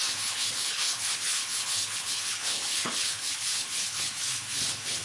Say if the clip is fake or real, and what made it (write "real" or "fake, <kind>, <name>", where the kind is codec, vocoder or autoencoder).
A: fake, codec, HILCodec